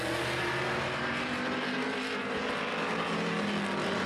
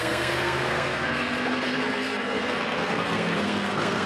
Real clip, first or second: first